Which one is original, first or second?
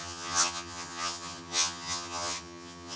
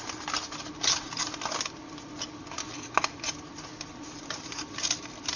second